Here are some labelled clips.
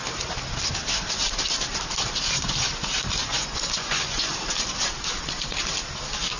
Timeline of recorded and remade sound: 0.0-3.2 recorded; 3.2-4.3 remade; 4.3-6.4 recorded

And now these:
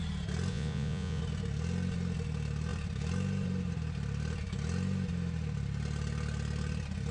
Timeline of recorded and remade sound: 0.0-0.5 recorded; 0.5-1.2 remade; 1.2-7.1 recorded

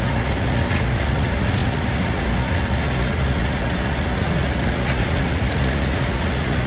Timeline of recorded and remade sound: 0.0-6.7 remade

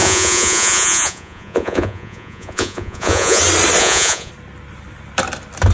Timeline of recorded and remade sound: 0.0-3.4 remade; 3.4-3.8 recorded; 3.8-4.3 remade; 4.3-5.7 recorded

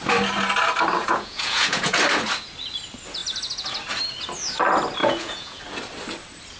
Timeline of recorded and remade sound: 0.0-1.0 recorded; 1.0-2.0 remade; 2.0-5.0 recorded; 5.0-5.6 remade; 5.6-6.6 recorded